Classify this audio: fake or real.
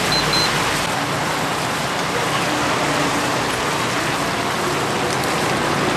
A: real